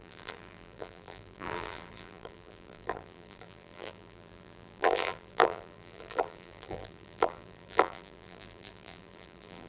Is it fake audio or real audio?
fake